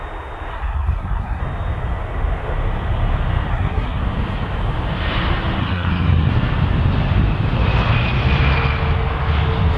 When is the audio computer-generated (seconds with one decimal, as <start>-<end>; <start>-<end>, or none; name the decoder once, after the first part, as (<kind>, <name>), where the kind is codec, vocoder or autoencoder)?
0.5-1.4 (codec, SNAC); 3.5-4.0; 5.6-6.3